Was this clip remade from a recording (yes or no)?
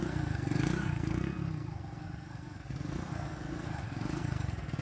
yes